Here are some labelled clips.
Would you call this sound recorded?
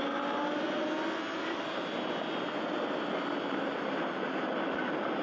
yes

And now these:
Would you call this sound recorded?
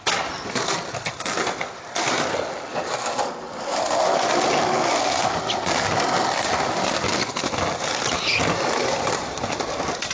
yes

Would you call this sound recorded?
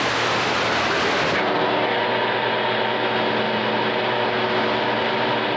yes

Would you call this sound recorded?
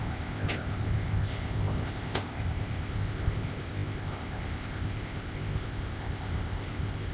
no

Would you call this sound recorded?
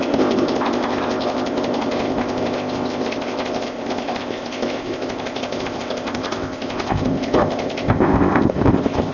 no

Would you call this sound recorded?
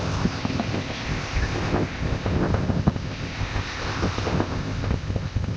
no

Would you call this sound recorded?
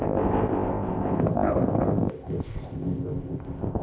no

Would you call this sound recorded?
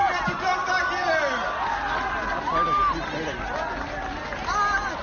yes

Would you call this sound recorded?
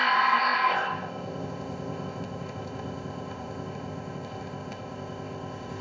no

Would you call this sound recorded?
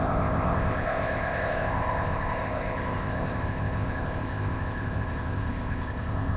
no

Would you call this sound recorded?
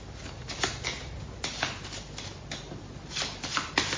yes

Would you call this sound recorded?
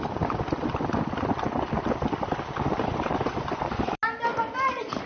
yes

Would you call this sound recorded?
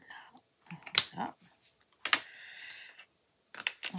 yes